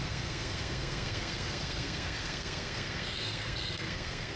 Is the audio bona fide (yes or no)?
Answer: no